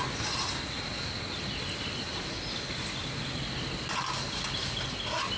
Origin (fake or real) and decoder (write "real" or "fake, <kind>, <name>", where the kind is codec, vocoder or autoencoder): real